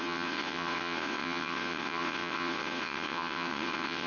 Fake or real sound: fake